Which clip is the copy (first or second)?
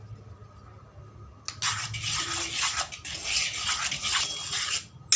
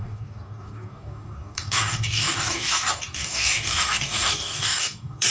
second